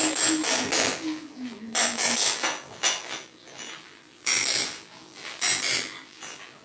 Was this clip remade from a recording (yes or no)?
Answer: yes